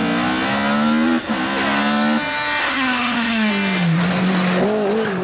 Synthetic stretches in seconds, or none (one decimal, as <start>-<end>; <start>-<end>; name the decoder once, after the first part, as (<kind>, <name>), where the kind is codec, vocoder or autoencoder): 2.6-3.5 (codec, SNAC)